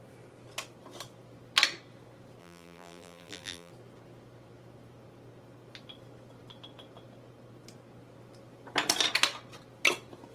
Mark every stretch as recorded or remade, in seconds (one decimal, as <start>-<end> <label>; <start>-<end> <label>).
0.0-2.4 recorded; 2.4-3.7 remade; 3.7-10.3 recorded